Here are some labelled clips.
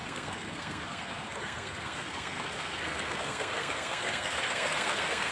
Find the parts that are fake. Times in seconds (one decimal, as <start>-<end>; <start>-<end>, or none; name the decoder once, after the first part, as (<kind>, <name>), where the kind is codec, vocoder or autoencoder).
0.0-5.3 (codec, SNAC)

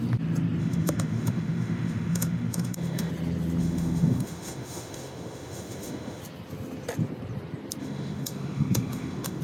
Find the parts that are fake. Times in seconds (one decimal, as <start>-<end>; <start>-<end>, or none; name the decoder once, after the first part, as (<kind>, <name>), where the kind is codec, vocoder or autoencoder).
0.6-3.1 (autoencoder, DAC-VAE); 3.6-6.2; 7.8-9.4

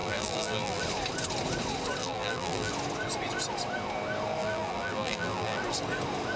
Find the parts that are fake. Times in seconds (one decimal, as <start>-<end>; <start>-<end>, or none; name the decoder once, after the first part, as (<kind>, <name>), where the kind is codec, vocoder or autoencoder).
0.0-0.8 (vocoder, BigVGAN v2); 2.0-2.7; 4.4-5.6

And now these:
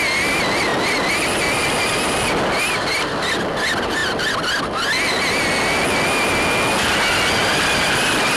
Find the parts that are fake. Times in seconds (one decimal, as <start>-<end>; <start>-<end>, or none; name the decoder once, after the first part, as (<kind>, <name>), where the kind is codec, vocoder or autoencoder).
none

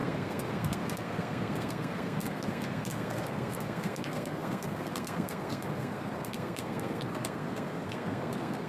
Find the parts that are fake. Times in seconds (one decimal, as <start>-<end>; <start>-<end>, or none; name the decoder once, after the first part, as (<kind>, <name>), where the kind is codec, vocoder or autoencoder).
0.0-8.7 (codec, SNAC)